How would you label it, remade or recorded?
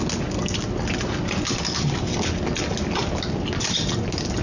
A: recorded